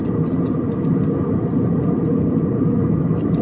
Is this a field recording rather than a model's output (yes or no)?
yes